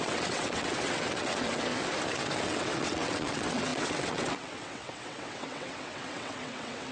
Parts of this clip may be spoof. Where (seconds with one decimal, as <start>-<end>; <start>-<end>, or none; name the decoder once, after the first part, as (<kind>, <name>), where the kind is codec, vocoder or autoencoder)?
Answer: 0.0-1.7 (vocoder, WaveNeXt); 2.4-6.9